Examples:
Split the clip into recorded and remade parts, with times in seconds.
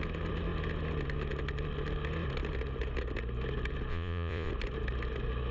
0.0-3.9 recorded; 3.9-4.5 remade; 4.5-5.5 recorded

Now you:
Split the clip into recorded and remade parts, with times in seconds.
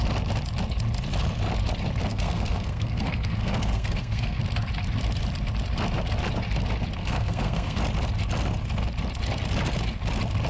0.0-2.1 recorded; 2.1-4.4 remade; 4.4-7.0 recorded; 7.0-7.8 remade; 7.8-10.5 recorded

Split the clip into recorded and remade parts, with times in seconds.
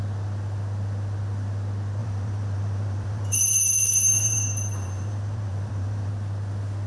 0.0-2.0 recorded; 2.0-6.1 remade; 6.1-6.9 recorded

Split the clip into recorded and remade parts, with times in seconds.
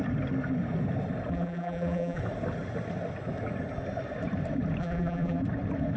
0.0-1.3 recorded; 1.3-2.2 remade; 2.2-4.8 recorded; 4.8-5.4 remade; 5.4-6.0 recorded